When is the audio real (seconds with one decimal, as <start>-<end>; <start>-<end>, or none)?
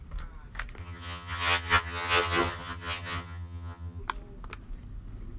0.0-0.8; 4.0-5.4